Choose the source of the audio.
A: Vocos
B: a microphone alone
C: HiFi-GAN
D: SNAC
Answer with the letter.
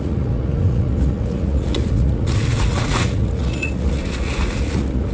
A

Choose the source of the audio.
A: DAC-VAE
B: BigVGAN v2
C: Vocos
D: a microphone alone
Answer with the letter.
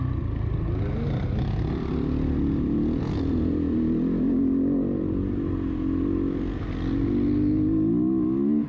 D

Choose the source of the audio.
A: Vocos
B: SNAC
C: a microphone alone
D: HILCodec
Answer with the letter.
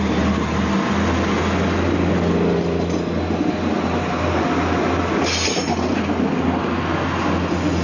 C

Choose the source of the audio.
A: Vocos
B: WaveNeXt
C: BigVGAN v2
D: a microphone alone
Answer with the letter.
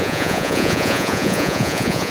A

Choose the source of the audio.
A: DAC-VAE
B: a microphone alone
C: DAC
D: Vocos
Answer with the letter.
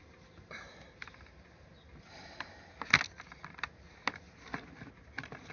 B